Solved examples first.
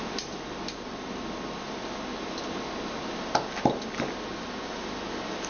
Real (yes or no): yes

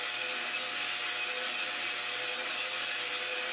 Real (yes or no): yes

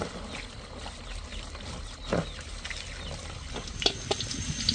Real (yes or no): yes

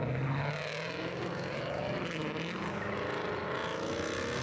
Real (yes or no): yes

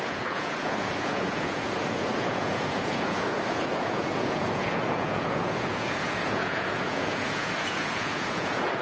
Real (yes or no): no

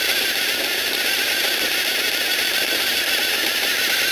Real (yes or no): no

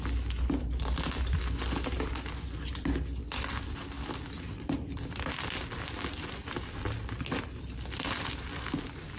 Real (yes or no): yes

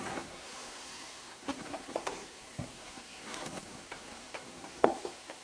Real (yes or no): no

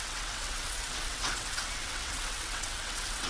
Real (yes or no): no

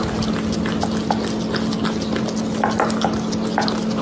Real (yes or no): yes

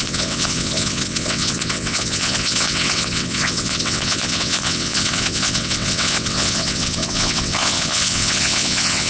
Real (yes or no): no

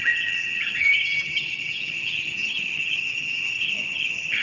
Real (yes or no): no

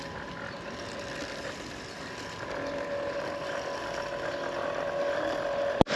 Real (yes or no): yes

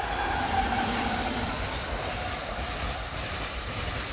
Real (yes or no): no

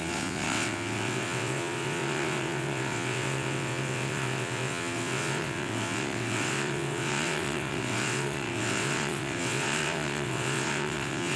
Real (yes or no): no